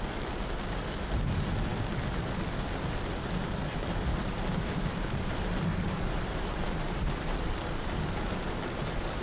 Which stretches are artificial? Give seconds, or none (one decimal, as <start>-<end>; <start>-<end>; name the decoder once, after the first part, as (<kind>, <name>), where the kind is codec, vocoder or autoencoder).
4.1-4.6 (vocoder, BigVGAN v2); 5.7-8.5